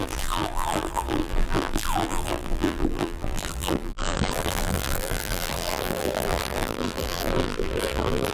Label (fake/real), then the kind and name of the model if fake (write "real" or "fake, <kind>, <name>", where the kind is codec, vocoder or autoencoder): fake, vocoder, BigVGAN v2